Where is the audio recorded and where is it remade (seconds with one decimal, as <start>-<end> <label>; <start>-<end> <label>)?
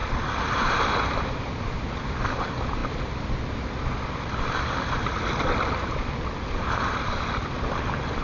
0.0-8.2 recorded